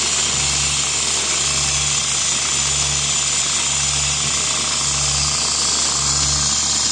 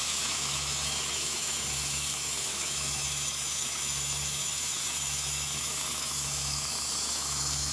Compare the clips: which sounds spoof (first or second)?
second